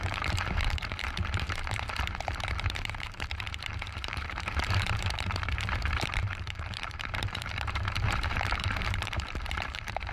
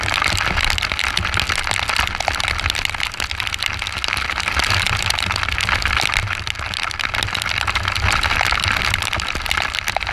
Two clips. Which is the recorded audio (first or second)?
second